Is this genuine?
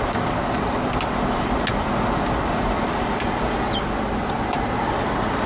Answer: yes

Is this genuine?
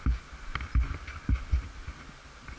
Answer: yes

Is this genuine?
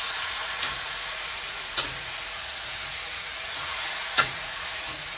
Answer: no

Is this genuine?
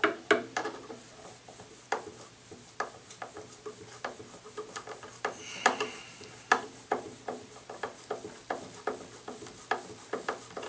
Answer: yes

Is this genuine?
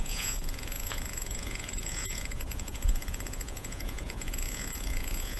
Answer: no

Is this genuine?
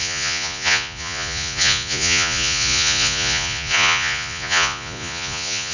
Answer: no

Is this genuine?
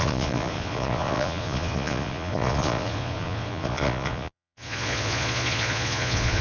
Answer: no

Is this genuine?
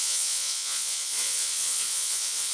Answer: no